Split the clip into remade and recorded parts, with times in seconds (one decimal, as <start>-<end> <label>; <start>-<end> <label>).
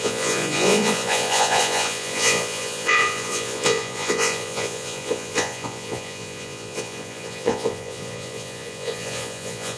0.0-9.8 remade